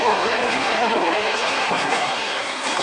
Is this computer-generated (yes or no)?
yes